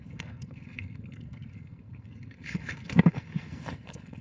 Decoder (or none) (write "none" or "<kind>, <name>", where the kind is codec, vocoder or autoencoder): codec, SNAC